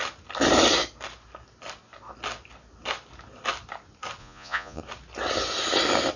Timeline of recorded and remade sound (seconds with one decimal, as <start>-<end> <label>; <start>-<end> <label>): 0.0-4.2 recorded; 4.2-4.8 remade; 4.8-6.2 recorded